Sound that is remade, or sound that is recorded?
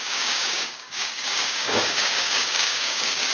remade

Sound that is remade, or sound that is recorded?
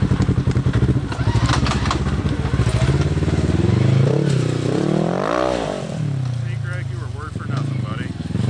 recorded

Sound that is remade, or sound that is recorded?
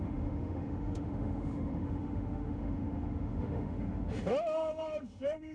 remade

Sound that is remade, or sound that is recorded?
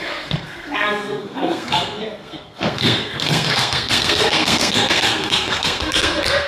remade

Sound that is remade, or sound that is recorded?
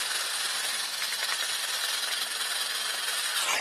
recorded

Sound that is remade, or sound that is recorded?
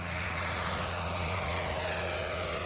remade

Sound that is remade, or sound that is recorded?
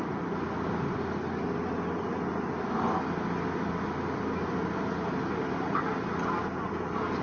recorded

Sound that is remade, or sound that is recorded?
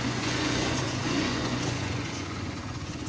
remade